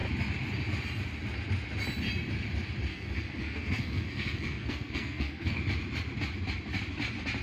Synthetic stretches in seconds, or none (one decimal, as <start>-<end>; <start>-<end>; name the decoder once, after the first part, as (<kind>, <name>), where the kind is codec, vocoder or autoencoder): 2.9-5.6 (codec, SNAC)